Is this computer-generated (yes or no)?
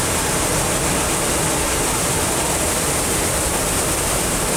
no